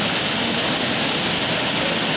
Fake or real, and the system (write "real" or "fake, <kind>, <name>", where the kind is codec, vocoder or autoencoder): real